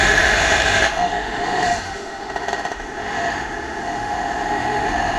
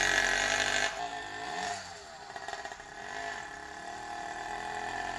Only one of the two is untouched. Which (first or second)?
second